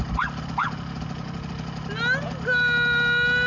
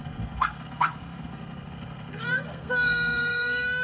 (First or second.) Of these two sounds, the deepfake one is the second